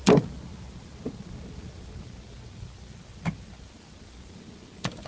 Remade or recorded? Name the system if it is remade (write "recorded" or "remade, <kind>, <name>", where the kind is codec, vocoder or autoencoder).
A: recorded